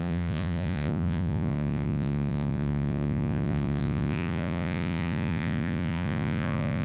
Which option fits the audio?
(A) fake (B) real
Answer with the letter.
A